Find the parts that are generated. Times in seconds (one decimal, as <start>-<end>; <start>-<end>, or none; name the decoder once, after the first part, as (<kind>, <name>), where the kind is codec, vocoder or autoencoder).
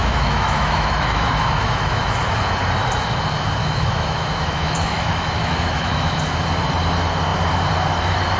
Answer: 0.0-2.2 (autoencoder, DAC-VAE); 3.6-6.2